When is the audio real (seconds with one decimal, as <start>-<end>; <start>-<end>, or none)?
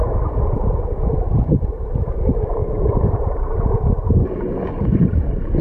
0.0-2.6; 3.7-5.6